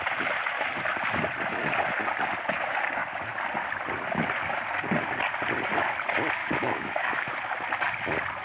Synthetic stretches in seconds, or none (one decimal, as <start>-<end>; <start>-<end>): 6.4-7.2